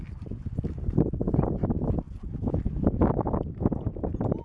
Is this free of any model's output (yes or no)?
yes